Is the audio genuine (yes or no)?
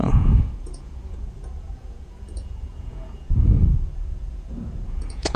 no